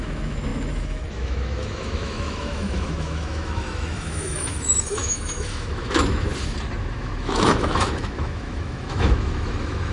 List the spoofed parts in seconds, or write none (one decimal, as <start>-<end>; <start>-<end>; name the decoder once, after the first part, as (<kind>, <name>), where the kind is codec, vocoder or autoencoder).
0.0-6.3 (autoencoder, DAC-VAE); 6.8-9.9